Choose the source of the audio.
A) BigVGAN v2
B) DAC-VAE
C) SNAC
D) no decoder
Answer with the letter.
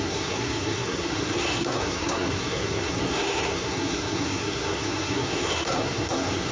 C